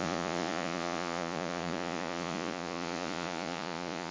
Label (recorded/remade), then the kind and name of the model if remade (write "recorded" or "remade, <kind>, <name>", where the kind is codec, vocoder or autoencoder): remade, vocoder, Vocos